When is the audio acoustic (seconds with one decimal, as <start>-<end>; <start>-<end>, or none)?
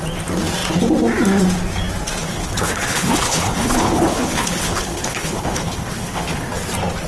0.0-2.2; 6.5-7.1